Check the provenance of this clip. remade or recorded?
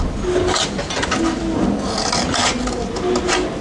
recorded